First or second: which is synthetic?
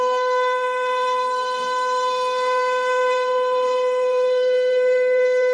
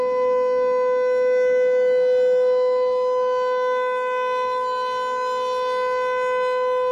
first